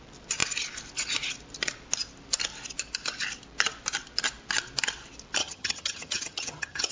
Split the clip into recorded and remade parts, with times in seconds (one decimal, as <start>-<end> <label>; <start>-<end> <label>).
0.0-5.4 recorded; 5.4-6.9 remade